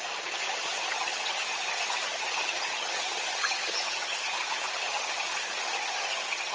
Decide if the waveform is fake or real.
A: fake